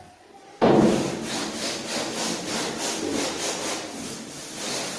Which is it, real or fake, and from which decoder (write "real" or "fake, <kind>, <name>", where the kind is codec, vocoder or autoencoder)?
real